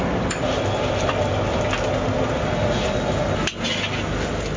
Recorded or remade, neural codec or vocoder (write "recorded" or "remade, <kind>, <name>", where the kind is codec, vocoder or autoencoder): recorded